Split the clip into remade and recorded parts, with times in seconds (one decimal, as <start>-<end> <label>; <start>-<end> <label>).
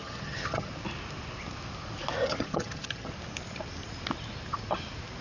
0.0-0.7 remade; 0.7-2.2 recorded; 2.2-3.1 remade; 3.1-5.2 recorded